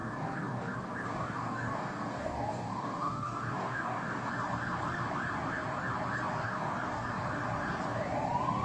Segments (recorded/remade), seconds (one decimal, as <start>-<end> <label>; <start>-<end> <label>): 0.0-4.3 remade; 4.3-6.4 recorded; 6.4-7.1 remade; 7.1-8.6 recorded